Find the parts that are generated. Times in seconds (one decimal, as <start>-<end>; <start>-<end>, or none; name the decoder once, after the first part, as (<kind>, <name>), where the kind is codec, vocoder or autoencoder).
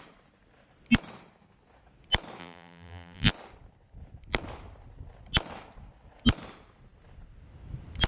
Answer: 2.4-3.3 (vocoder, BigVGAN v2)